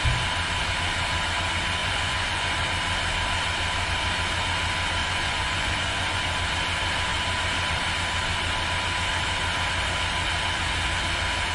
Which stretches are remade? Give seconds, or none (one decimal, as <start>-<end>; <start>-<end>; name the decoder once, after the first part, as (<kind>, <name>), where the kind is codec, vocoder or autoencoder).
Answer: 1.8-2.5 (vocoder, Vocos); 5.0-6.2